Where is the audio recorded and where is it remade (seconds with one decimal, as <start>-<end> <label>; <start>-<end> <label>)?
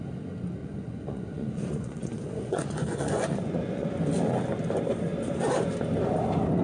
0.0-0.6 recorded; 0.6-3.9 remade; 3.9-6.6 recorded